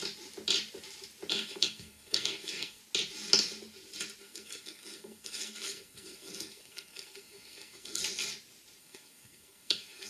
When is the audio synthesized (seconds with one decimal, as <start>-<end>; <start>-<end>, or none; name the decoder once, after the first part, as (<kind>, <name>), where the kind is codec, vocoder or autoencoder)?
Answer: 1.3-2.8 (codec, SNAC); 4.2-8.0; 8.8-10.1